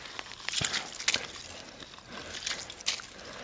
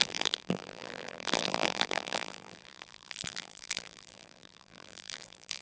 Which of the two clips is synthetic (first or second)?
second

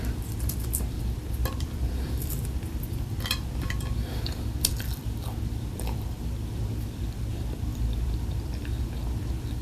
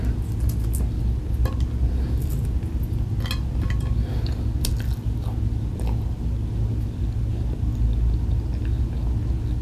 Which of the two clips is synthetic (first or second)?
first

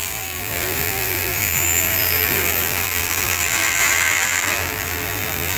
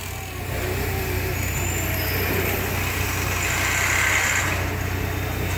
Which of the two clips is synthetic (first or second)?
first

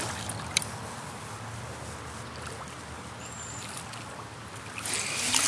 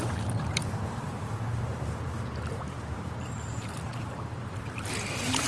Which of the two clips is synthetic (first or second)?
second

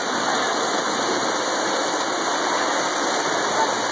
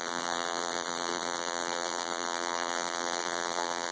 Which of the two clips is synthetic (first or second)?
second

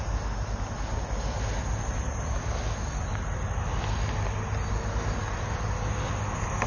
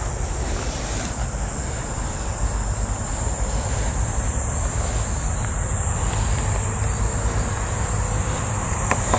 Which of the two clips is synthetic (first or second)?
second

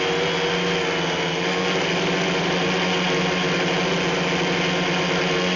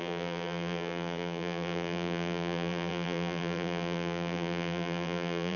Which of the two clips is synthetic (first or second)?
second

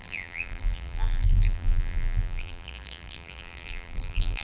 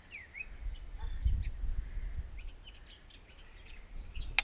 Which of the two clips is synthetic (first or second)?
first